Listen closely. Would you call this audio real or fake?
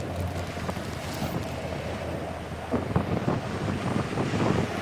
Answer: real